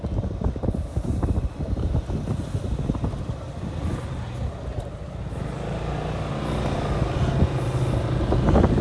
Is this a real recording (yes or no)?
yes